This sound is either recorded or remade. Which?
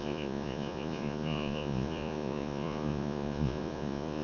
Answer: remade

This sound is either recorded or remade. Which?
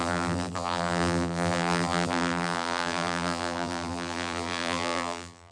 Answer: remade